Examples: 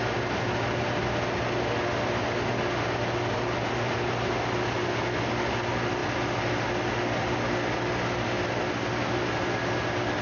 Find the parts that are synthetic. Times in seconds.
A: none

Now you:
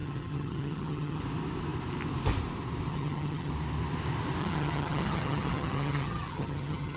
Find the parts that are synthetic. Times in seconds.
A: 0.0-1.2 (vocoder, HiFi-GAN); 2.9-3.5; 4.4-7.0

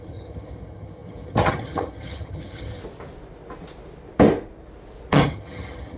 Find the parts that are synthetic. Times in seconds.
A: 0.0-2.8 (vocoder, HiFi-GAN); 5.1-6.0

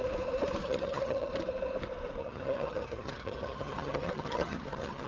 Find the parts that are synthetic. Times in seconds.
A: 0.6-1.3 (vocoder, HiFi-GAN); 2.2-5.1

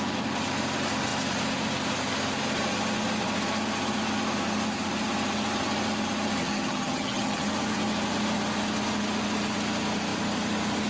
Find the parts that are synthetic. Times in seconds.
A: 6.4-7.5 (vocoder, HiFi-GAN)

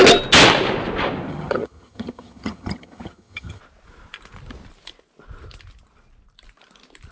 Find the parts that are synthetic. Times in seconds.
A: 1.3-3.6 (vocoder, HiFi-GAN)

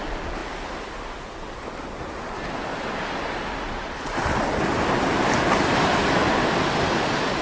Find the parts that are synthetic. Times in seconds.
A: none